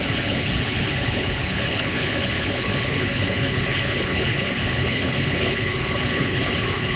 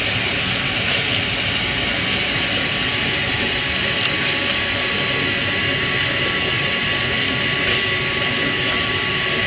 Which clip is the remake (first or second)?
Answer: first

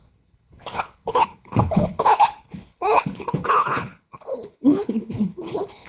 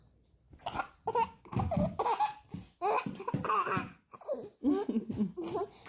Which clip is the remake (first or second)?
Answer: first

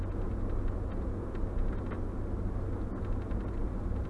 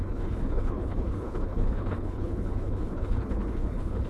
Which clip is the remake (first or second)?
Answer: second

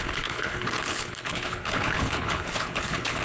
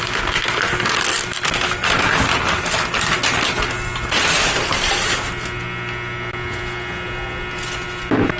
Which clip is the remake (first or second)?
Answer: first